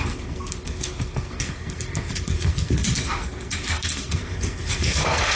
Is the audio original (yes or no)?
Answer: no